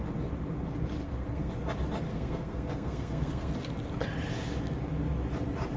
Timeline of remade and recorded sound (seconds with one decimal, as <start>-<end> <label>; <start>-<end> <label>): 0.0-1.0 recorded; 1.0-1.5 remade; 1.5-2.1 recorded; 2.1-3.5 remade; 3.5-5.8 recorded